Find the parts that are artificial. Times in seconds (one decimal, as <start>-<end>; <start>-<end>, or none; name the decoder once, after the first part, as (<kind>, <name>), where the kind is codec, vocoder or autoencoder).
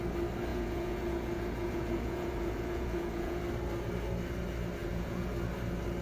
0.5-3.4 (vocoder, Vocos); 4.8-5.3